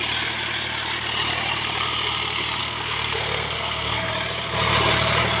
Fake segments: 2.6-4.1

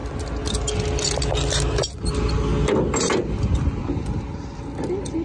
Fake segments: none